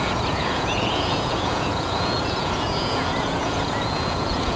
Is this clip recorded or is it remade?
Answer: remade